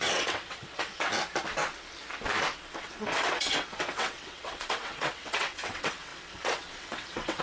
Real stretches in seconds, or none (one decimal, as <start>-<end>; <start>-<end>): 1.1-2.8